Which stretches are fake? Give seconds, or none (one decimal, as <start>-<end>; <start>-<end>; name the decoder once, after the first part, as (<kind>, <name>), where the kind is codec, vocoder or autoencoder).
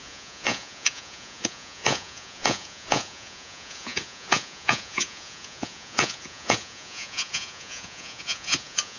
0.0-9.0 (vocoder, Vocos)